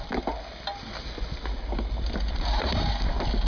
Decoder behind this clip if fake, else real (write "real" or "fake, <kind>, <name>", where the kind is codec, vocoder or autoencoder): real